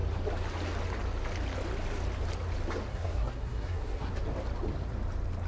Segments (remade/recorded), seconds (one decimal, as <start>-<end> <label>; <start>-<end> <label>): 0.0-2.9 recorded; 2.9-4.1 remade; 4.1-5.5 recorded